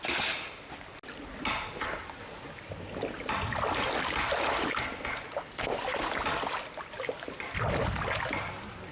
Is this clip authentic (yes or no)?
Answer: yes